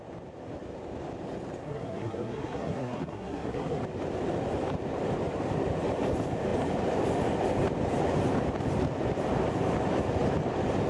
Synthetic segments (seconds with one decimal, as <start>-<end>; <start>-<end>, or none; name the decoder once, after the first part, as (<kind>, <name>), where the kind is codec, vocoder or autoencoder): 1.6-3.8 (codec, SNAC)